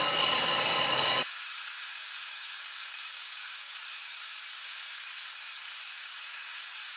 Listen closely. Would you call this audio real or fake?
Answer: fake